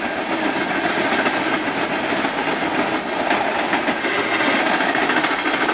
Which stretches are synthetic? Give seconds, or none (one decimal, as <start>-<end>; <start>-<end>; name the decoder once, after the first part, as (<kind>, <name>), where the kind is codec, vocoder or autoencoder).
4.0-4.6 (autoencoder, DAC-VAE)